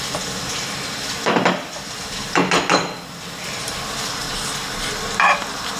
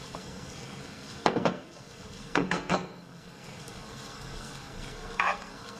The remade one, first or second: second